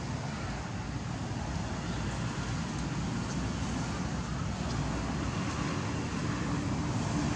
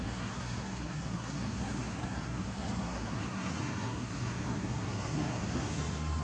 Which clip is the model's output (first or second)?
second